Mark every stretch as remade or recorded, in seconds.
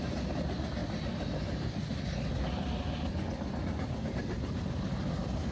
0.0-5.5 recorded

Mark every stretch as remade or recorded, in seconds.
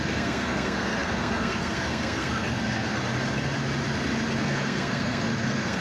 0.0-3.0 remade; 3.0-4.4 recorded; 4.4-5.8 remade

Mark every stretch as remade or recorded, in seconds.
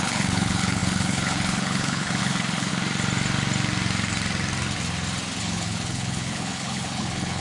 0.0-2.7 remade; 2.7-5.4 recorded; 5.4-7.4 remade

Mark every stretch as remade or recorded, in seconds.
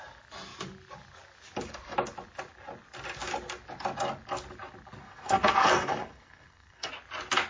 0.0-5.0 recorded; 5.0-6.9 remade; 6.9-7.5 recorded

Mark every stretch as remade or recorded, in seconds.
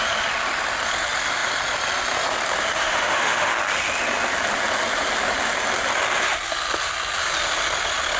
0.0-2.8 recorded; 2.8-3.5 remade; 3.5-8.2 recorded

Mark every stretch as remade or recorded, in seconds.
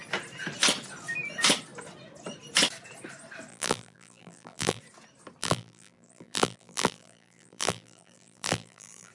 0.0-3.5 recorded; 3.5-4.8 remade; 4.8-5.4 recorded; 5.4-9.1 remade